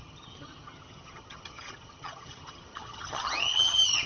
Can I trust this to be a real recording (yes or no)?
no